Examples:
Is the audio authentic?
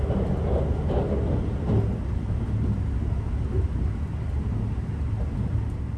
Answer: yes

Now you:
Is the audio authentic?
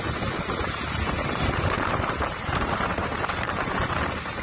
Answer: no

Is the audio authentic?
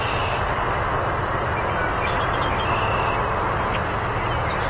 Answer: yes